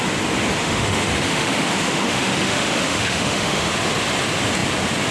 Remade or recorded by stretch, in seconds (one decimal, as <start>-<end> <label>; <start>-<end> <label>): 0.0-0.6 recorded; 0.6-3.7 remade; 3.7-5.1 recorded